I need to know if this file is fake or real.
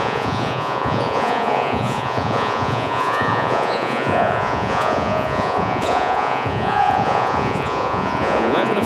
fake